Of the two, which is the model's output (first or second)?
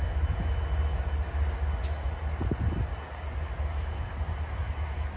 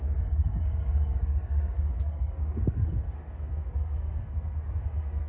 second